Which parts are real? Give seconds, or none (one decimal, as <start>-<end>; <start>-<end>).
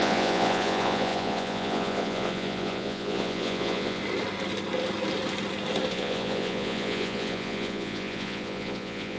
4.0-5.9